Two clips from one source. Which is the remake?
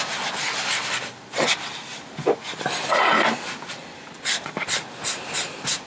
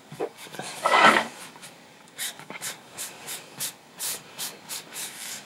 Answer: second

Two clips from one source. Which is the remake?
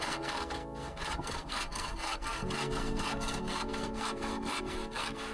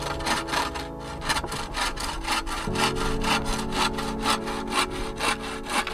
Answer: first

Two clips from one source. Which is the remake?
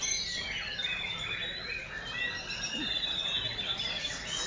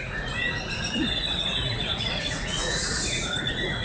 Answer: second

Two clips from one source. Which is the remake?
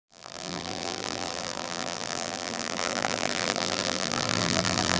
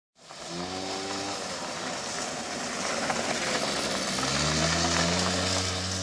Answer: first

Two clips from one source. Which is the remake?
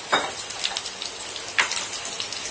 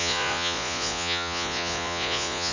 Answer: second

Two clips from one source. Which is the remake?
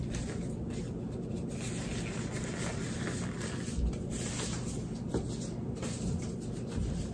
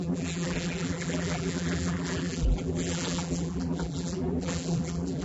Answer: second